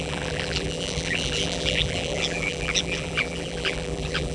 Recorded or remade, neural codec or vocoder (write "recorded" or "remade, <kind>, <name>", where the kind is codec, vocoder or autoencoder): remade, vocoder, BigVGAN v2